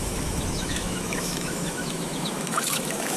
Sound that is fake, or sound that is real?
fake